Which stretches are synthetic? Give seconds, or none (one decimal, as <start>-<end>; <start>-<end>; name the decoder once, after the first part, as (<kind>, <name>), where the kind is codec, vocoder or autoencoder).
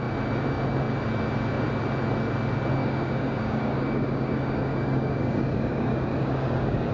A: 2.8-6.9 (codec, DAC)